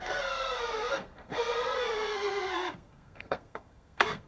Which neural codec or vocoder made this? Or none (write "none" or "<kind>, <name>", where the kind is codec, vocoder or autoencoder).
codec, SNAC